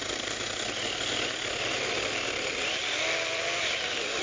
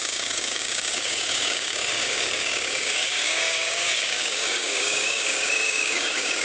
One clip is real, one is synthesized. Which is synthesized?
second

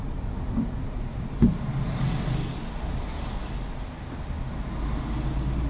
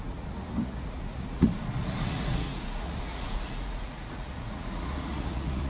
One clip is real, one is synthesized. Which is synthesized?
second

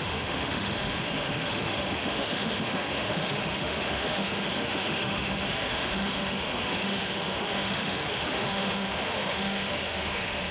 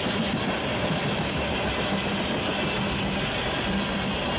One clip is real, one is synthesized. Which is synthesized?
first